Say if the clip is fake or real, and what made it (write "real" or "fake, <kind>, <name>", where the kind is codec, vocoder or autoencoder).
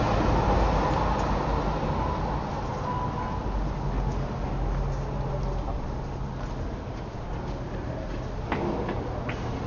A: real